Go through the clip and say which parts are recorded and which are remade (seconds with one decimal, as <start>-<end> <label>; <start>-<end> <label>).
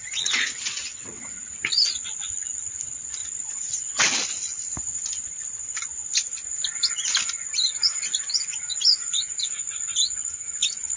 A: 0.0-1.5 remade; 1.5-3.2 recorded; 3.2-4.0 remade; 4.0-11.0 recorded